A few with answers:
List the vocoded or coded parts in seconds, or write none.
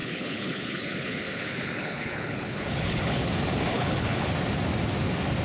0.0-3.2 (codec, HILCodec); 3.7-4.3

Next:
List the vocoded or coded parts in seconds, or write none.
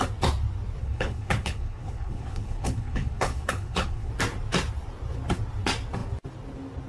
0.8-4.1 (codec, HILCodec)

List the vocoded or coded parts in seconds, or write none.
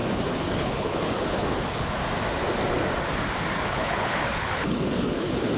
0.0-2.0 (codec, HILCodec); 3.7-5.6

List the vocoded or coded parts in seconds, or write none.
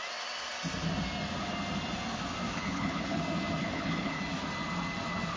2.5-3.2 (codec, HILCodec); 3.6-4.2